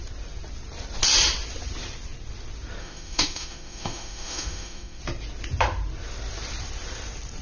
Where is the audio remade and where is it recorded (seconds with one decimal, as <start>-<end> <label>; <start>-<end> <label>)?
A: 0.0-2.8 recorded; 2.8-5.0 remade; 5.0-7.4 recorded